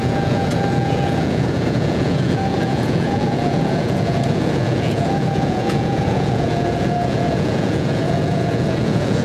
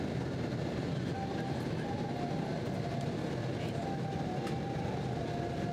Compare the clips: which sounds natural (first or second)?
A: second